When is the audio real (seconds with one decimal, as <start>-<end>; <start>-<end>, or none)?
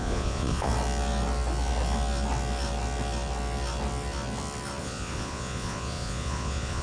0.7-4.8